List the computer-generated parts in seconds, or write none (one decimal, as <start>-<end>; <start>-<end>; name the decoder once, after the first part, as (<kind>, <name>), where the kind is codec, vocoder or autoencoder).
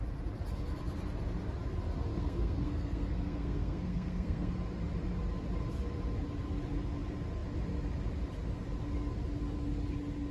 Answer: 2.1-4.5 (codec, SNAC)